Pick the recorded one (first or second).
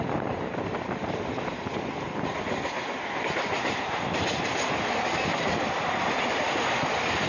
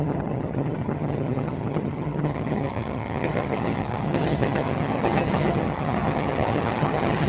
first